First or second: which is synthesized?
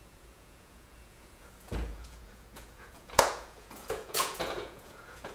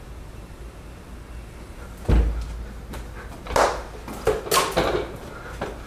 first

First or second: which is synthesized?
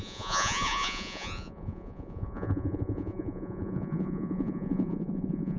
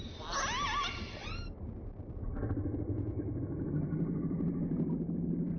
first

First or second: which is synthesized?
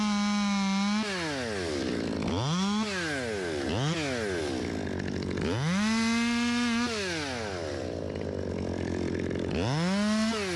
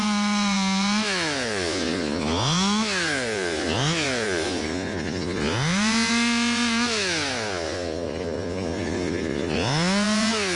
second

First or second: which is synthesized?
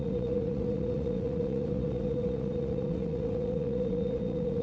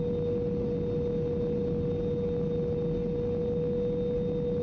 first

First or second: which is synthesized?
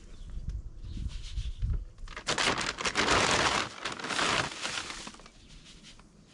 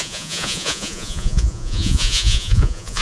second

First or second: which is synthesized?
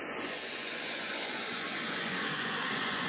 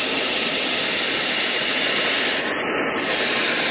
first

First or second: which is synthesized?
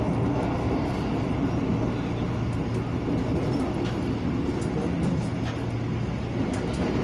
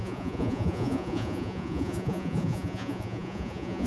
second